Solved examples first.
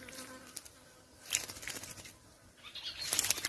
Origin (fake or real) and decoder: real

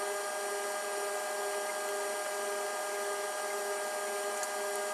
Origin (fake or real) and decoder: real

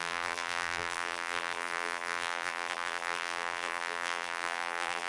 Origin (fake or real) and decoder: fake, vocoder, BigVGAN v2